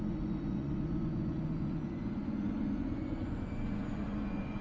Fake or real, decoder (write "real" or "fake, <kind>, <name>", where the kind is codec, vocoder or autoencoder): fake, vocoder, Vocos